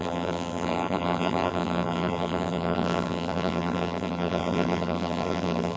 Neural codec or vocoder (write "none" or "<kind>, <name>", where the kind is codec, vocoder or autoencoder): vocoder, BigVGAN v2